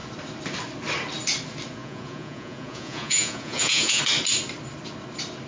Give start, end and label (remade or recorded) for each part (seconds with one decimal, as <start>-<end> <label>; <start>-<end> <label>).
0.0-1.8 recorded; 1.8-4.0 remade; 4.0-5.5 recorded